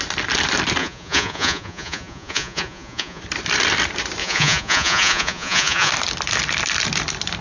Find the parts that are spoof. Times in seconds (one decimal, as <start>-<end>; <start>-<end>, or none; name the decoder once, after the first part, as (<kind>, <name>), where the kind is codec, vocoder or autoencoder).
0.8-3.2 (vocoder, Vocos); 4.2-5.9